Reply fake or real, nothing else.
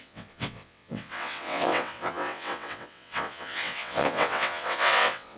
fake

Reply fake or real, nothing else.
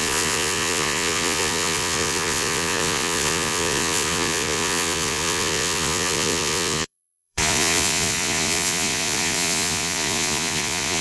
fake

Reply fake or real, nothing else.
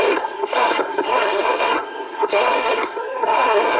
fake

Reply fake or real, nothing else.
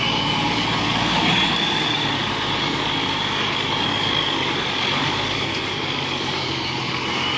fake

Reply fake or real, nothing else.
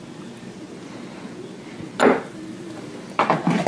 real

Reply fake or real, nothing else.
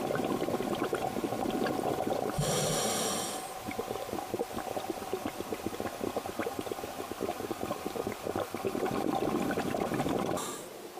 real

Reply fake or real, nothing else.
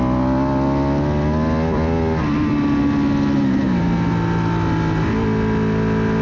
real